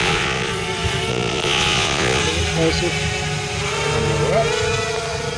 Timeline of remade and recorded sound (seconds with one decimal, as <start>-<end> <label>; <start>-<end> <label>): 0.0-0.5 remade; 0.5-1.1 recorded; 1.1-2.2 remade; 2.2-5.4 recorded